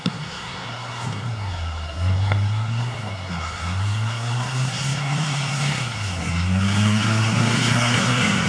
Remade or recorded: remade